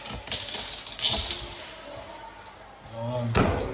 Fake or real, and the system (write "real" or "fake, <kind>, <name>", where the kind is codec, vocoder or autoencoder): real